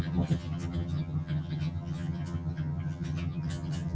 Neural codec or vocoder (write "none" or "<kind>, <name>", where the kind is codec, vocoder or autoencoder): vocoder, HiFi-GAN